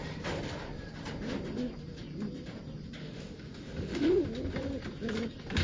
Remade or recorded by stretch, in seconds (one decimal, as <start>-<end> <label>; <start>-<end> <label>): 0.0-3.0 recorded; 3.0-4.1 remade; 4.1-5.6 recorded